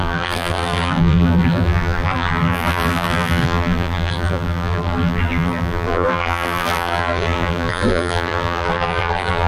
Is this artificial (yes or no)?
yes